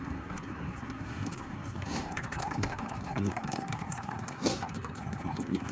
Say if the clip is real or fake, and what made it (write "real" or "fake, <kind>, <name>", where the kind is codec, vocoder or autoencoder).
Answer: fake, codec, SNAC